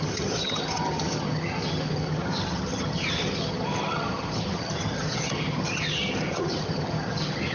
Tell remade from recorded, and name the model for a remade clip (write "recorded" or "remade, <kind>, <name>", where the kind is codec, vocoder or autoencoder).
remade, vocoder, HiFi-GAN